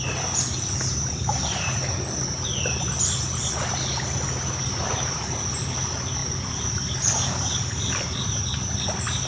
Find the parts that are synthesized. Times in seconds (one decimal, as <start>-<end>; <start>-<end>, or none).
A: none